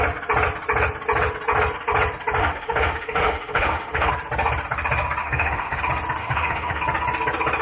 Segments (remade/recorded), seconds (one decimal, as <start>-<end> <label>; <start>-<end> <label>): 0.0-2.4 recorded; 2.4-4.1 remade; 4.1-5.2 recorded; 5.2-5.8 remade; 5.8-6.2 recorded; 6.2-6.8 remade; 6.8-7.6 recorded